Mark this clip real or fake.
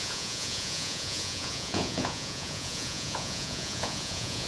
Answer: fake